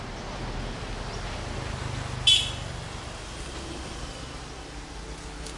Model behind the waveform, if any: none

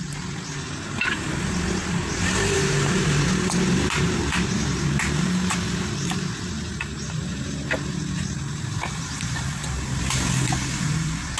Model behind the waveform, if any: vocoder, BigVGAN v2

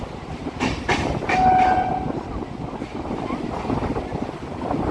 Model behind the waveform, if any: none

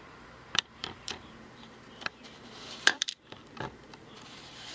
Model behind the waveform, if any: vocoder, BigVGAN v2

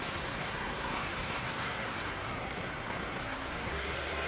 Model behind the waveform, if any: codec, SNAC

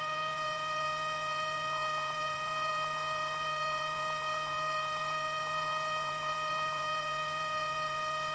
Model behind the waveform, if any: vocoder, Vocos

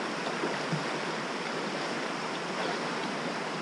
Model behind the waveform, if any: none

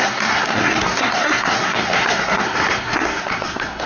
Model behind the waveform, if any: codec, SNAC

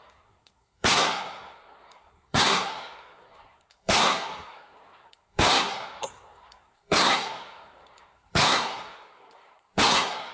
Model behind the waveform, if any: codec, SNAC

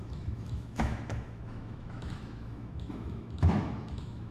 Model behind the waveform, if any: autoencoder, DAC-VAE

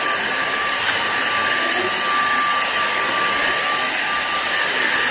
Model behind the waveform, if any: none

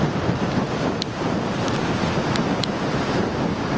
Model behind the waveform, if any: none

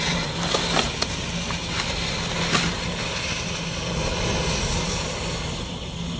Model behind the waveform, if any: none